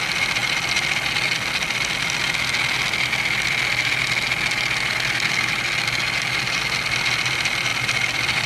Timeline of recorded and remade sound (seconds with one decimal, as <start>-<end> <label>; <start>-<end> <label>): 0.0-8.5 recorded